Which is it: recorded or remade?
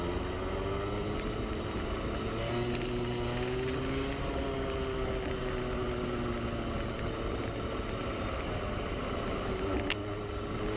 recorded